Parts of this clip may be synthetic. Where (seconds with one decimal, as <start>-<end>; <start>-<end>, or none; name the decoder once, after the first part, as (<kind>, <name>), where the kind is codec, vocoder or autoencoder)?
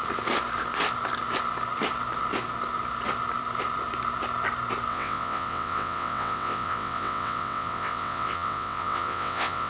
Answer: 4.9-9.7 (vocoder, WaveNeXt)